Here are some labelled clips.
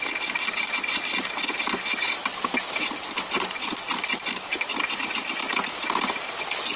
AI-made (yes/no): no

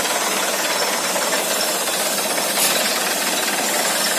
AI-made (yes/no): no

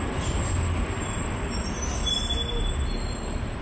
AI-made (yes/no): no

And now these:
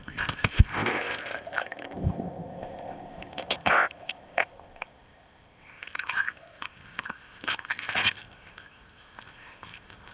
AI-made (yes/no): yes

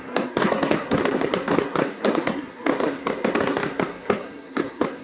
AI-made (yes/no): yes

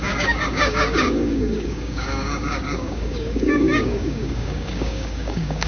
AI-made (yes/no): yes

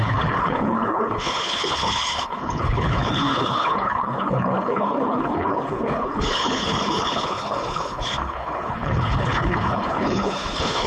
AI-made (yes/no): yes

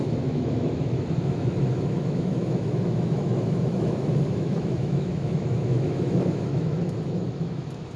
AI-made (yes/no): yes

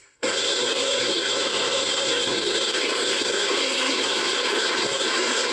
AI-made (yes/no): yes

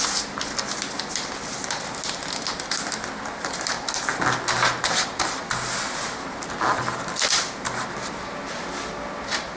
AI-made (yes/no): no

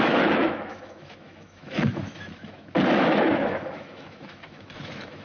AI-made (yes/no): yes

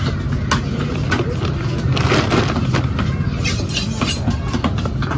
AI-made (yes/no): no